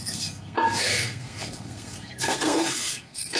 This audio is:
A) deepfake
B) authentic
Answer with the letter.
A